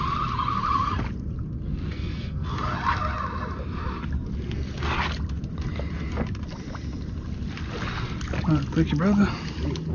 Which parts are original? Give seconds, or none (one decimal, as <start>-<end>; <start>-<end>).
0.0-1.7; 2.5-9.9